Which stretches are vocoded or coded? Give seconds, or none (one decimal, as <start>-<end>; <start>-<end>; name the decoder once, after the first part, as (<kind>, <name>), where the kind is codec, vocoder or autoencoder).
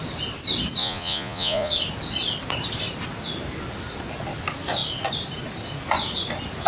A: 0.8-1.7 (vocoder, Vocos)